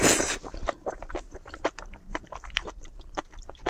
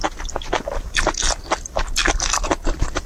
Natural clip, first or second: second